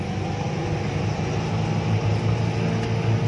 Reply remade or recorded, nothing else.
recorded